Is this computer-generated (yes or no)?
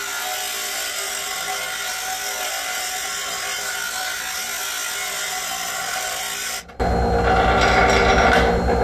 no